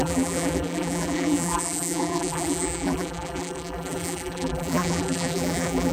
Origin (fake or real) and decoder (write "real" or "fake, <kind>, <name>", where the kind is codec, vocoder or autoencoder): fake, vocoder, BigVGAN v2